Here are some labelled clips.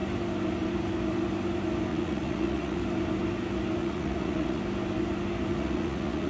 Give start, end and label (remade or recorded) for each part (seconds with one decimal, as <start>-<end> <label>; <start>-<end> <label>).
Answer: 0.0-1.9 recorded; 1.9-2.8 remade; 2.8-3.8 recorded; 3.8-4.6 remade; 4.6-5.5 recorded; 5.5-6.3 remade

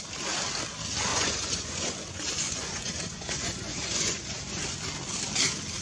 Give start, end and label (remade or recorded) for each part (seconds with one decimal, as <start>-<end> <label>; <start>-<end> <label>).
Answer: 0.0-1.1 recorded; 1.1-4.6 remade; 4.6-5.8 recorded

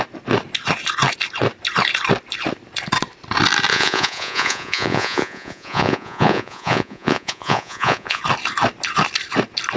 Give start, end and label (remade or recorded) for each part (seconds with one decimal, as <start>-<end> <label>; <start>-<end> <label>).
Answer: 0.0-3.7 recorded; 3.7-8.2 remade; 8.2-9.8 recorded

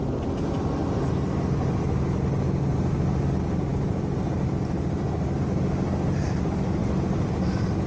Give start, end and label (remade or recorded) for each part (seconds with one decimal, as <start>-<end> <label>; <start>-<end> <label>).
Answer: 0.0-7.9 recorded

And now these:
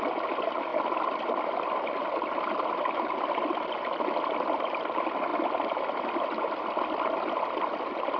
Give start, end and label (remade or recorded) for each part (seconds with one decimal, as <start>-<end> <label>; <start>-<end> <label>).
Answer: 0.0-8.2 recorded

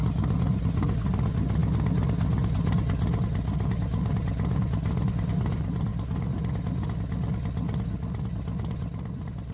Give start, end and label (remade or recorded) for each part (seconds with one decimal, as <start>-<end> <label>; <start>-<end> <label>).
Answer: 0.0-9.5 recorded

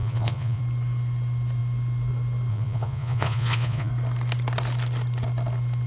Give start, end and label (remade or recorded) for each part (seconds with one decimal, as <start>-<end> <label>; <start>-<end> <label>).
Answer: 0.0-0.6 remade; 0.6-2.5 recorded; 2.5-3.9 remade; 3.9-5.9 recorded